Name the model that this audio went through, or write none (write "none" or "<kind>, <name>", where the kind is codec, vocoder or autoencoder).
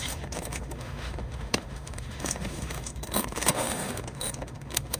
autoencoder, DAC-VAE